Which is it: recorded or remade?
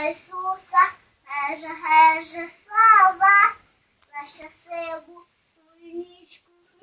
recorded